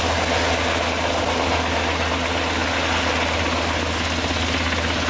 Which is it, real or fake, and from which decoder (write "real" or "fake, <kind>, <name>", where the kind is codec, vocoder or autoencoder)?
real